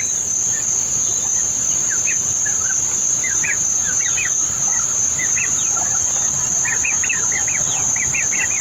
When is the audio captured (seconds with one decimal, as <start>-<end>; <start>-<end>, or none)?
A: 0.0-1.3; 2.1-3.0; 6.0-8.6

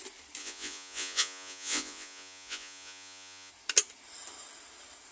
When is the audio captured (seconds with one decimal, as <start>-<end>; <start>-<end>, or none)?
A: 0.0-0.4; 3.5-5.1